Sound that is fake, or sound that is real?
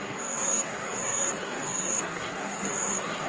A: fake